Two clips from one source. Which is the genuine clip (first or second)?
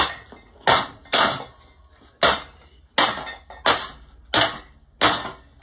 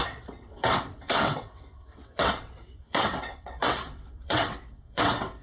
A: first